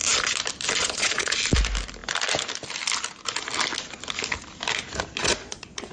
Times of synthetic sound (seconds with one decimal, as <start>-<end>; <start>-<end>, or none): 0.8-1.4; 5.2-5.9

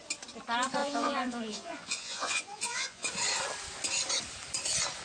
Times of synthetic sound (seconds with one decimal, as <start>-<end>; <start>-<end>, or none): 0.8-3.1

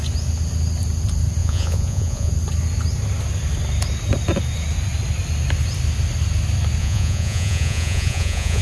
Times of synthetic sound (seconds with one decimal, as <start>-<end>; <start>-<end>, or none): 1.4-2.3; 6.8-8.6